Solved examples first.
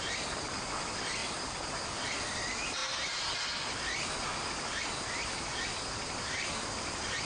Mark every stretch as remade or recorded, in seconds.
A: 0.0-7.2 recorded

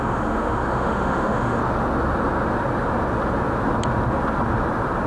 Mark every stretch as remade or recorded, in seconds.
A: 0.0-1.6 remade; 1.6-5.1 recorded

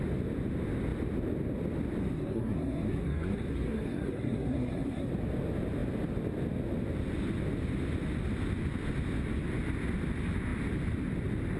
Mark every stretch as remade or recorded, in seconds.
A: 0.0-2.0 recorded; 2.0-5.1 remade; 5.1-11.6 recorded

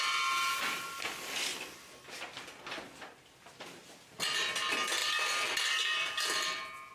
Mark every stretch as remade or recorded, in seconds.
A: 0.0-6.9 recorded

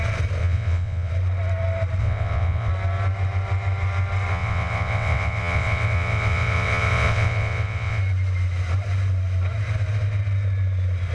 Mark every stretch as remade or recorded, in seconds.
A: 0.0-0.4 recorded; 0.4-1.1 remade; 1.1-2.0 recorded; 2.0-2.7 remade; 2.7-4.3 recorded; 4.3-8.0 remade; 8.0-11.1 recorded

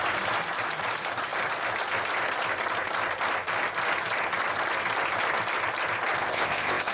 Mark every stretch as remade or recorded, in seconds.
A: 0.0-6.2 recorded; 6.2-6.9 remade

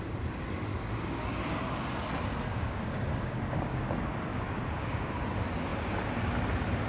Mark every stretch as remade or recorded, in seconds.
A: 0.0-0.7 recorded; 0.7-1.5 remade; 1.5-2.5 recorded; 2.5-3.8 remade; 3.8-4.3 recorded; 4.3-5.1 remade; 5.1-6.9 recorded